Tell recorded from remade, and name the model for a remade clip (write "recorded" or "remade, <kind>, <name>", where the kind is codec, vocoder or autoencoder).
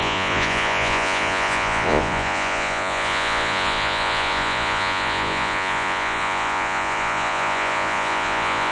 remade, vocoder, Vocos